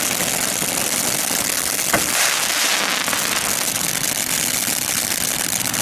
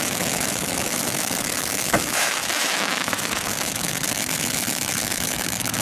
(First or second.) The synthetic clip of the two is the second